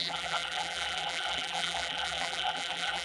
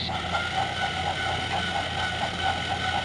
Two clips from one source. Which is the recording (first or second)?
second